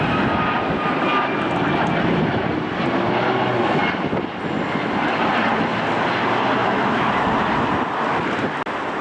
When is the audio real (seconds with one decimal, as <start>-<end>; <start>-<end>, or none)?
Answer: 0.0-6.6; 7.1-9.0